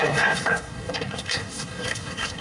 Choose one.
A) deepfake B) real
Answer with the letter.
A